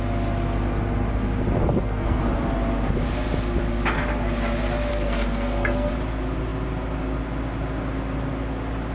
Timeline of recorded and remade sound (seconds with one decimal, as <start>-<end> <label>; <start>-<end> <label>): 0.0-1.6 recorded; 1.6-2.2 remade; 2.2-4.9 recorded; 4.9-5.9 remade; 5.9-8.9 recorded